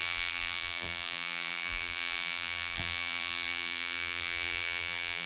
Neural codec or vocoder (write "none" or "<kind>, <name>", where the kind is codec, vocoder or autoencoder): vocoder, BigVGAN v2